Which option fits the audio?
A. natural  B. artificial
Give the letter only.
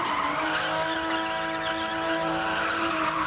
A